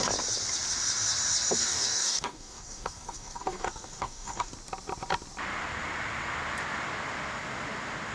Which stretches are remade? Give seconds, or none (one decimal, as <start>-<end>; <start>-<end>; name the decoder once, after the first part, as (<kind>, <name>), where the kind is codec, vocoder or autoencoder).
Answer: 1.6-4.5 (codec, DAC)